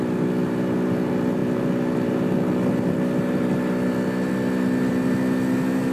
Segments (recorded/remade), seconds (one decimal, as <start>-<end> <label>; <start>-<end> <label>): 0.0-5.9 recorded